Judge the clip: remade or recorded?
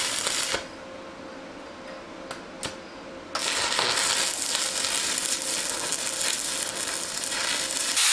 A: recorded